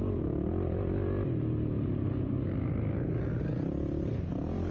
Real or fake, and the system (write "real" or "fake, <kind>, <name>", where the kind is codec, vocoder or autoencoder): real